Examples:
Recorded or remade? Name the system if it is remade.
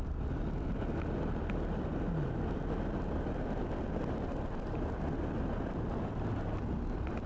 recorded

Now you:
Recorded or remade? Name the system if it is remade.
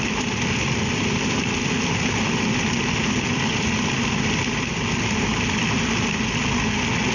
recorded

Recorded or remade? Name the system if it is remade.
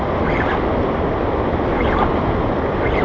recorded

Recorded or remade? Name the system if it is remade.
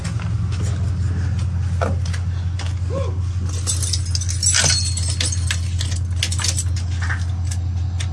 recorded